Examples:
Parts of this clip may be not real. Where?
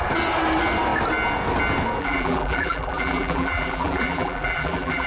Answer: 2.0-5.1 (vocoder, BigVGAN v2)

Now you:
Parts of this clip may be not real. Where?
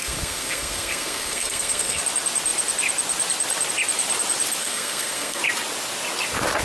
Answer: 0.0-2.0 (codec, SNAC); 4.6-5.4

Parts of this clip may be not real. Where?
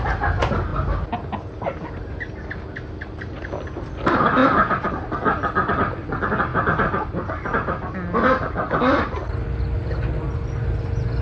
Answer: none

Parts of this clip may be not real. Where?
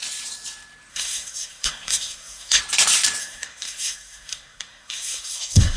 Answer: 0.9-2.6 (codec, SNAC); 3.2-5.8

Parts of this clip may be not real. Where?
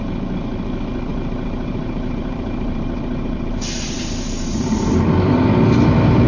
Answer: 1.1-4.9 (vocoder, BigVGAN v2)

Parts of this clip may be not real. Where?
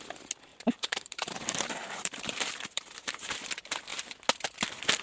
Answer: 0.5-3.3 (vocoder, BigVGAN v2)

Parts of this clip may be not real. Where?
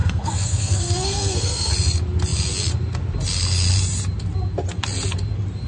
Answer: 0.0-1.7 (codec, SNAC)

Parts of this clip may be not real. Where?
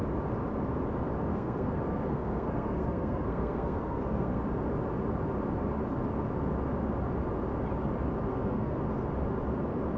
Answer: 1.3-4.4 (codec, SNAC); 8.3-8.8